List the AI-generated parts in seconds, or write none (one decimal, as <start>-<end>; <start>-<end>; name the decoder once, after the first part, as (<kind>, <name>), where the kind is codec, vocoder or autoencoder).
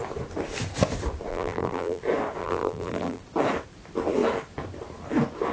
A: 1.3-2.0 (vocoder, BigVGAN v2); 2.4-3.2